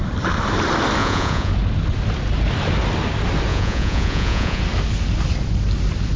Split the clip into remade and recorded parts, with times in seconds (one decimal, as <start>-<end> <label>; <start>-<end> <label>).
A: 0.0-1.0 recorded; 1.0-1.5 remade; 1.5-3.5 recorded; 3.5-4.6 remade; 4.6-6.2 recorded